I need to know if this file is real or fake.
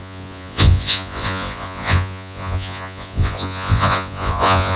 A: fake